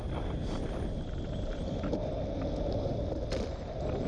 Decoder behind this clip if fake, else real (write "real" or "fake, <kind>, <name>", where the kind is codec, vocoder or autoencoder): real